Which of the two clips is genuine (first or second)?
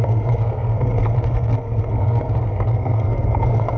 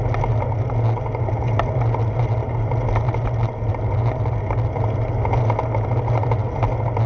second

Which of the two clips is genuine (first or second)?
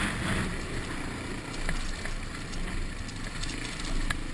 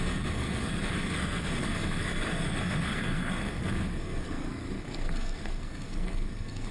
first